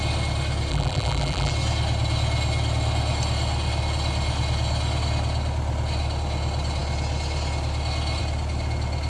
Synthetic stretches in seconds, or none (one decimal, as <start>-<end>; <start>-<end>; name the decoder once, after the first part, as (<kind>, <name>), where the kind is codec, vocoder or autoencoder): 0.7-1.5 (vocoder, BigVGAN v2)

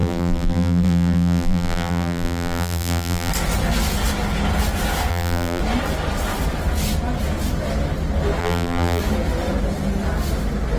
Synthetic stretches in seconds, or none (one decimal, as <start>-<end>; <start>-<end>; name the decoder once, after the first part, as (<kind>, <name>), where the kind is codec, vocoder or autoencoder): 0.0-3.3 (vocoder, BigVGAN v2); 5.1-5.6; 8.4-9.0

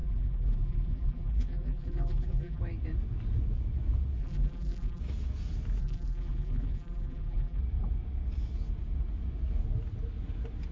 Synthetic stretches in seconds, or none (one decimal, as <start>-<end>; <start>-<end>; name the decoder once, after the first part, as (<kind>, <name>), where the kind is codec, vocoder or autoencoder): 0.0-2.6 (vocoder, BigVGAN v2); 4.2-5.0; 5.8-7.6

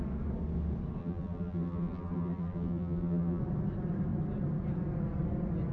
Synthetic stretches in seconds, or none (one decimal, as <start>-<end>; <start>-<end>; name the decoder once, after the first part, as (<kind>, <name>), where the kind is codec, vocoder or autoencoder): 1.0-3.4 (vocoder, BigVGAN v2)

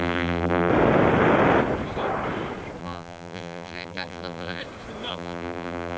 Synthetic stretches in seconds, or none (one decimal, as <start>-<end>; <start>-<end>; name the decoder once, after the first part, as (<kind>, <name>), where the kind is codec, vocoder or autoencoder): 0.0-0.7 (vocoder, BigVGAN v2); 2.8-4.6; 5.1-6.0

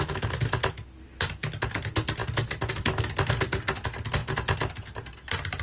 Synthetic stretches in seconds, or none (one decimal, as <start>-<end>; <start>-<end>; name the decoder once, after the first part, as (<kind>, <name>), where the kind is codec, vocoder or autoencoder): none

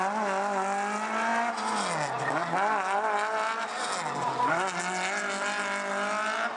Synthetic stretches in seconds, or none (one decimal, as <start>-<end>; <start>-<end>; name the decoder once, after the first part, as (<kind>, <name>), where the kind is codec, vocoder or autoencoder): none

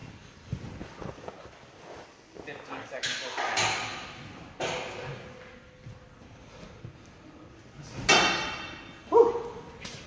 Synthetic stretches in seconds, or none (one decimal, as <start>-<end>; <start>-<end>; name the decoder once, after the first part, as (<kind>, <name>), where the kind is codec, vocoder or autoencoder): none